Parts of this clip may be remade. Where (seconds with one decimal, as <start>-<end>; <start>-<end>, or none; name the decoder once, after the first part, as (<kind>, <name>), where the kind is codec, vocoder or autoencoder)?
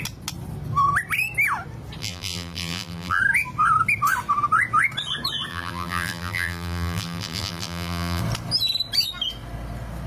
2.0-3.2 (vocoder, BigVGAN v2); 5.5-8.2